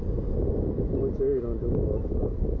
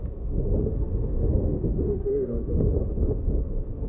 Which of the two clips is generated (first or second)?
second